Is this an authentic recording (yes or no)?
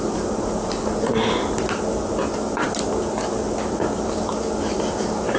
yes